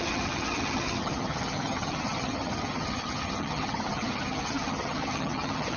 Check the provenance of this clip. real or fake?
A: fake